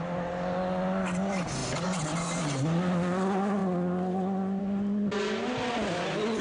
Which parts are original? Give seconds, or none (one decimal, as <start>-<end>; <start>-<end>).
0.0-6.4